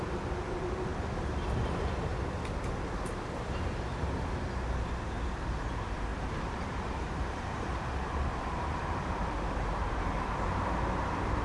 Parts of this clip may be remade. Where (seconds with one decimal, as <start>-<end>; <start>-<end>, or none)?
6.1-10.0